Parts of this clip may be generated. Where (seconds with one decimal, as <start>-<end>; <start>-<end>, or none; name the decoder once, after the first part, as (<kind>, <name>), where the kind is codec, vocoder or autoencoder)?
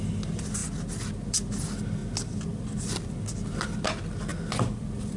none